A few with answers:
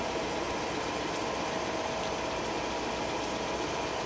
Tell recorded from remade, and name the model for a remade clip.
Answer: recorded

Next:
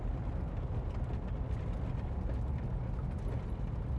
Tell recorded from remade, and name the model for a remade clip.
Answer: recorded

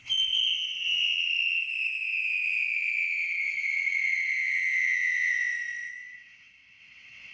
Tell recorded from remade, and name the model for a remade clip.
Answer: remade, vocoder, WaveNeXt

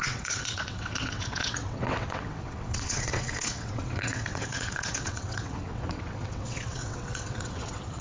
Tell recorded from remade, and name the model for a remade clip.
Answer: remade, vocoder, WaveNeXt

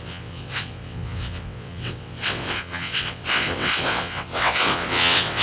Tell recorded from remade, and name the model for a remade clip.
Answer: remade, vocoder, WaveNeXt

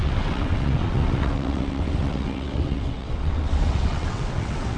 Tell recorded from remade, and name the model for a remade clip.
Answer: remade, vocoder, WaveNeXt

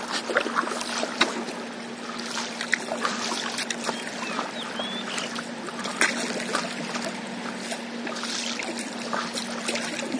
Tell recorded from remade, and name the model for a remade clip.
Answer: recorded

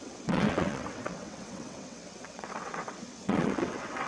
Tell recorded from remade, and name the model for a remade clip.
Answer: remade, vocoder, WaveNeXt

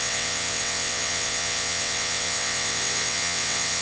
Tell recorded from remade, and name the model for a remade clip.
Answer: remade, vocoder, WaveNeXt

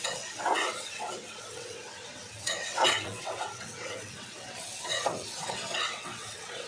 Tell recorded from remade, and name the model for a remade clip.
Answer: remade, vocoder, WaveNeXt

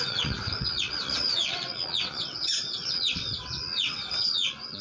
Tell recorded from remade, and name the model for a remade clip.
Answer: remade, vocoder, WaveNeXt